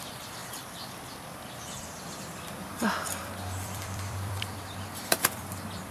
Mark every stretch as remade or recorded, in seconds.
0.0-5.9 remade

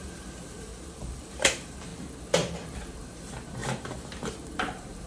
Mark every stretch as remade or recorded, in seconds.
0.0-0.7 remade; 0.7-1.3 recorded; 1.3-1.9 remade; 1.9-3.0 recorded; 3.0-5.1 remade

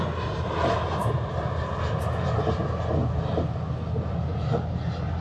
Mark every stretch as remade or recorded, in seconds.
0.0-1.0 recorded; 1.0-1.6 remade; 1.6-5.2 recorded

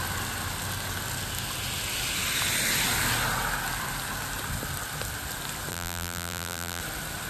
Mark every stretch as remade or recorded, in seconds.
0.0-5.7 recorded; 5.7-6.8 remade; 6.8-7.3 recorded

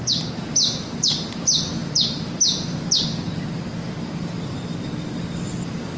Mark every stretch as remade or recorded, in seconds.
0.0-6.0 recorded

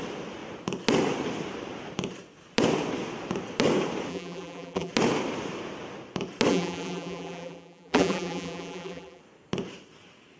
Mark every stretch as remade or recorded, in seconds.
0.0-4.1 recorded; 4.1-4.9 remade; 4.9-6.5 recorded; 6.5-9.2 remade; 9.2-10.4 recorded